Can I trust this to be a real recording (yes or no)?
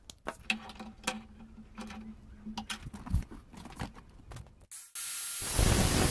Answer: yes